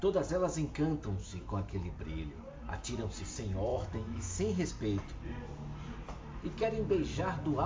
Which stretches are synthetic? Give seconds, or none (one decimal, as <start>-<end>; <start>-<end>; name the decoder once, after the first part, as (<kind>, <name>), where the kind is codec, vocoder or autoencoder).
1.2-1.9 (autoencoder, DAC-VAE); 3.7-4.7